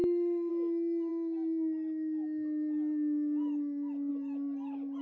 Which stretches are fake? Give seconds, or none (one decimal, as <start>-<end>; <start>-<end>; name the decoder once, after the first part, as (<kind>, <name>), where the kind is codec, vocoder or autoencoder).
0.0-0.5 (autoencoder, DAC-VAE)